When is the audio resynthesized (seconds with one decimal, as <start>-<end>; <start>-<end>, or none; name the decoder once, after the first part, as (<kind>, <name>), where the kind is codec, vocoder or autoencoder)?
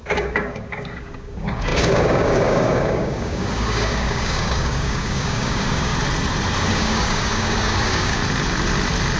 0.0-5.9 (codec, DAC); 6.7-8.2